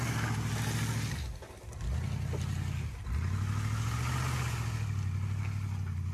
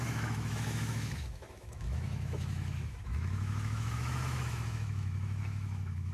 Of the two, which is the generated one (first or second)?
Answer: second